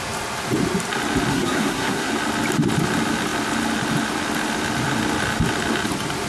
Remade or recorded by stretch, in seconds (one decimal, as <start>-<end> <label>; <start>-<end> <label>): 0.0-1.3 recorded; 1.3-2.1 remade; 2.1-6.3 recorded